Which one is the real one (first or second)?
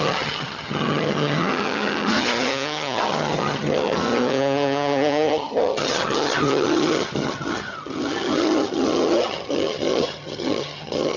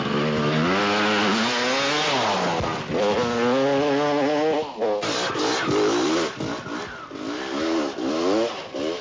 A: second